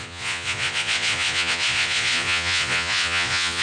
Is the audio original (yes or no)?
no